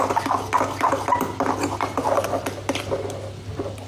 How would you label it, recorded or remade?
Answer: recorded